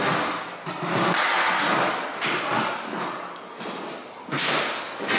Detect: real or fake real